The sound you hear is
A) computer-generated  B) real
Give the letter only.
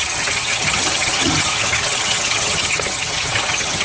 A